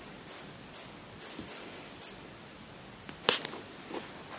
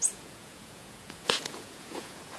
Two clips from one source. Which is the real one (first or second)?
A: first